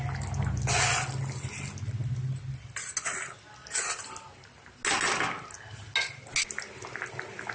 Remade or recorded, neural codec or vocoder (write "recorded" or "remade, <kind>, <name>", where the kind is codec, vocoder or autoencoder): recorded